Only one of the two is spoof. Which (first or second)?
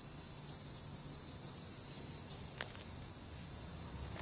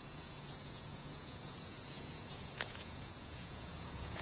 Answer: second